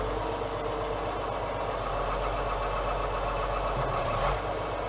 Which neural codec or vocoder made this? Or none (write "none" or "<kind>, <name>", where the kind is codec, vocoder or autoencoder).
none